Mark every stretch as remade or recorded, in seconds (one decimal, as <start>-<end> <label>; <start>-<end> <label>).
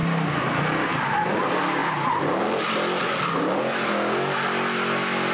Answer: 0.0-5.3 recorded